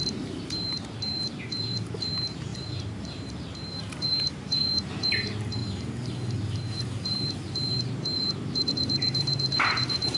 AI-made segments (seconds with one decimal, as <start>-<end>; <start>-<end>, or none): 0.0-10.2